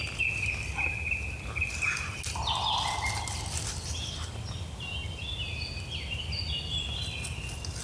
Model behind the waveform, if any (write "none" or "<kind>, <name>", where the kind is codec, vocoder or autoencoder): none